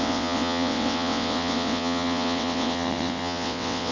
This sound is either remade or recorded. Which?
remade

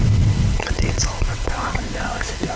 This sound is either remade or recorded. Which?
remade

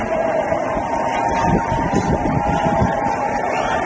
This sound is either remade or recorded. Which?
recorded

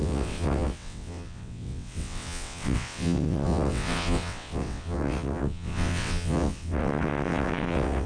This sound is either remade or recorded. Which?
remade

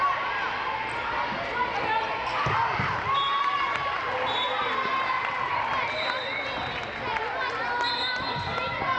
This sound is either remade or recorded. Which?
recorded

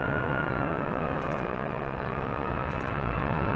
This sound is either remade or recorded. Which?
remade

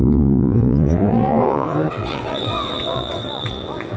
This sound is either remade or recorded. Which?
remade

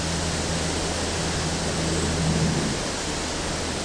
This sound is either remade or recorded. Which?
recorded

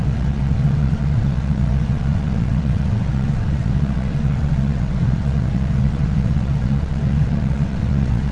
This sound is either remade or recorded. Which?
remade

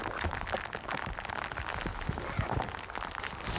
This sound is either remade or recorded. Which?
recorded